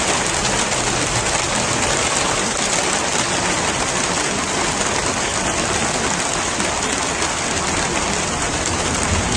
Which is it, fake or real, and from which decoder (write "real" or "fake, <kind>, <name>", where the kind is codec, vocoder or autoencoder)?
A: real